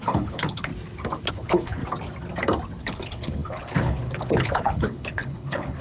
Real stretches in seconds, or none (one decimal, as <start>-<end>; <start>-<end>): 0.7-1.3; 1.8-2.8